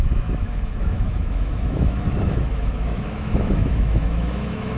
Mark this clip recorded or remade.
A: remade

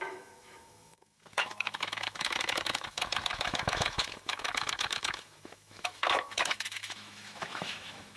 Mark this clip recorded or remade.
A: remade